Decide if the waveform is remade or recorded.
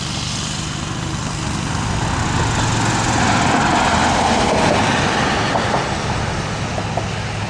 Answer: recorded